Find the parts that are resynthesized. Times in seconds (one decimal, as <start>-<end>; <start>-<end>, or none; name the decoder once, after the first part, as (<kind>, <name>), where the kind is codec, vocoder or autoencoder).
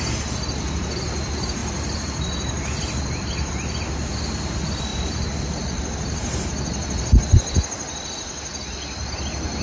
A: none